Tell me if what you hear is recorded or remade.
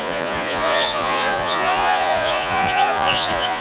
remade